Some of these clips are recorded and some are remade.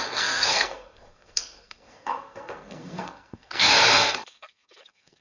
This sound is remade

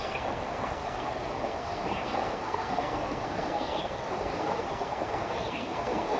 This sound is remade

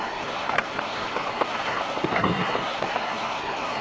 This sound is remade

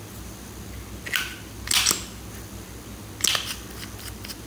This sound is recorded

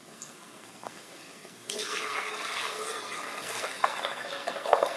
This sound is remade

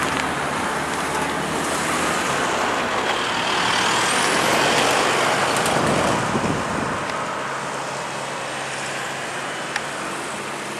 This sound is recorded